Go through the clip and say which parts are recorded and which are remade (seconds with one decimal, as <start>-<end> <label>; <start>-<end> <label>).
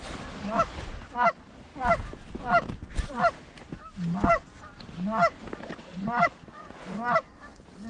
0.0-5.9 recorded; 5.9-7.4 remade; 7.4-7.9 recorded